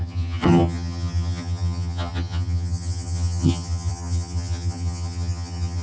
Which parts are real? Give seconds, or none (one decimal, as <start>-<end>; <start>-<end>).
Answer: none